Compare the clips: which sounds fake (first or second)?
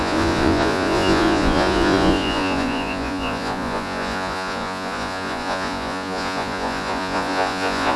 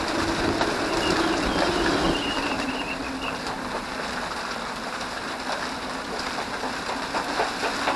first